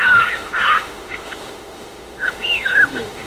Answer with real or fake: fake